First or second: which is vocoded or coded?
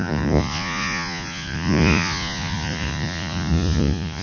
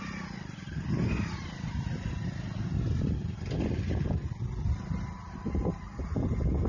first